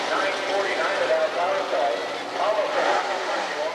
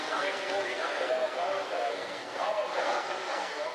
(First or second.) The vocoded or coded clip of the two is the second